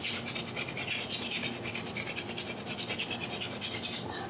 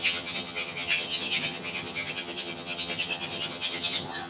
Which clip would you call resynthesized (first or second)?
second